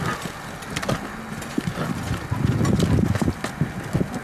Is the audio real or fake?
real